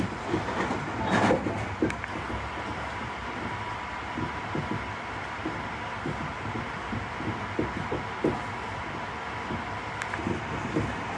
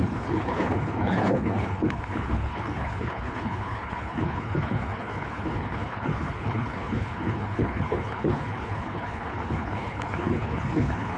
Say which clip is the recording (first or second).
first